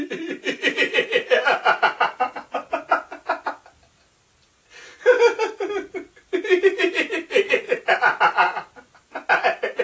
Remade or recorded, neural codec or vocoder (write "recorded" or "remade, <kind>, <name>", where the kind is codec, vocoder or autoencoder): recorded